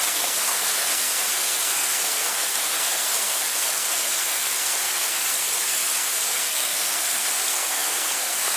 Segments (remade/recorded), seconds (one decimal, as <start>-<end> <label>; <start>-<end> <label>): 0.0-8.6 remade